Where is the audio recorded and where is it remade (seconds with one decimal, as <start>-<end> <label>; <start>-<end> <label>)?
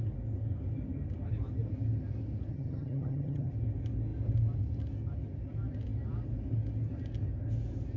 0.0-2.5 recorded; 2.5-3.5 remade; 3.5-8.0 recorded